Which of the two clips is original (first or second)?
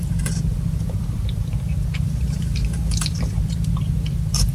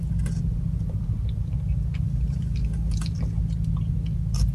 second